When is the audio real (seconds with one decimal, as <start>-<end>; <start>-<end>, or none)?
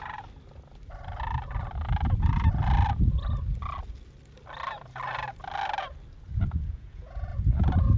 0.0-6.3; 7.3-8.0